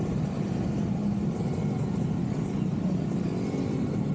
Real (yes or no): yes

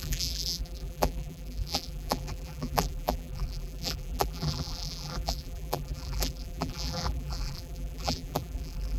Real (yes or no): no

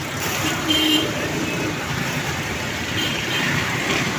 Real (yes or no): no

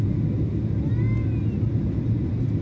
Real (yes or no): yes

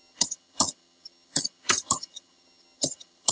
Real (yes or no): no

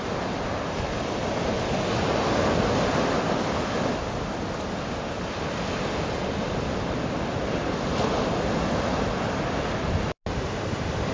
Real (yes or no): yes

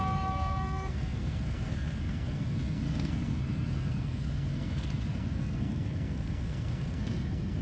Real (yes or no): no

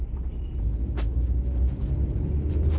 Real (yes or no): yes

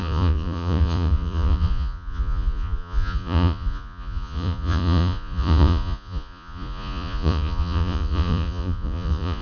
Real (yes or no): no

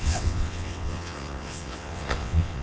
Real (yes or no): no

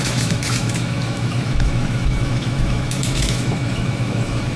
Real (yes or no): no